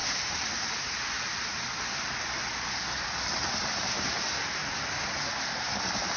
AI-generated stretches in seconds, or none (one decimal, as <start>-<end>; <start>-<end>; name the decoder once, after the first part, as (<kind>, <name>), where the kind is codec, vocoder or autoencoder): 1.7-6.2 (vocoder, BigVGAN v2)